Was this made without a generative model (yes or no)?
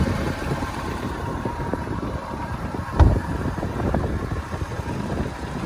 no